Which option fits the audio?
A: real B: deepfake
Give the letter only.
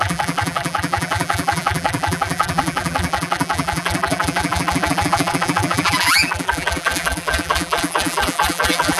B